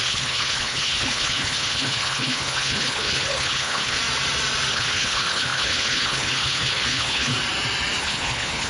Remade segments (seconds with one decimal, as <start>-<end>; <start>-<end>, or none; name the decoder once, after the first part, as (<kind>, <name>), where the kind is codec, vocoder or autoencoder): 0.0-4.0 (codec, HILCodec); 4.7-7.3; 8.0-8.7